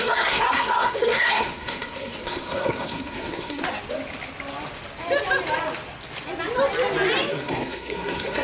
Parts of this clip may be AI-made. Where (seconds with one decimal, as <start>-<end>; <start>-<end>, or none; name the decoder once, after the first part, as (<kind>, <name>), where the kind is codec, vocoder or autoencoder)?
0.0-3.6 (codec, SNAC); 7.3-8.4